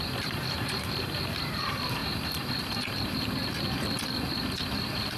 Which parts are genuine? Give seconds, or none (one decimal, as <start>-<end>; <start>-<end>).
2.0-5.2